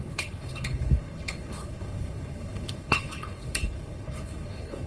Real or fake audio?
fake